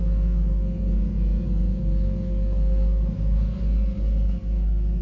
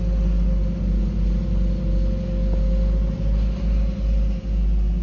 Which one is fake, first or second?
first